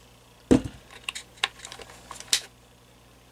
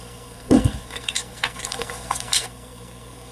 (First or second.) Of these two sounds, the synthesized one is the second